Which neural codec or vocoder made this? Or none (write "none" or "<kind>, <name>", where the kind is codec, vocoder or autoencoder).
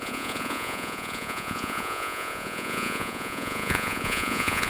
vocoder, Vocos